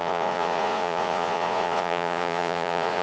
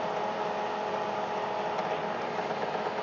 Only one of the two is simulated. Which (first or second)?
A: first